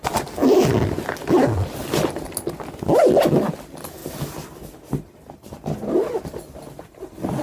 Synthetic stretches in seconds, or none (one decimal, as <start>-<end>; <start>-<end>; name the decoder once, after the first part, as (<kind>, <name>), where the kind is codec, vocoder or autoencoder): none